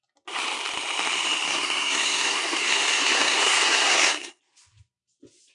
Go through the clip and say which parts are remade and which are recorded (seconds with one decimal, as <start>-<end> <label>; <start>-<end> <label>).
0.0-1.5 recorded; 1.5-4.4 remade; 4.4-5.5 recorded